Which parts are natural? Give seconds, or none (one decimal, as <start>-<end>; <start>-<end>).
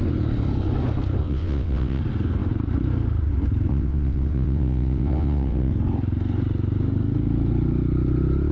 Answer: 0.0-1.2; 2.0-3.7; 5.7-8.5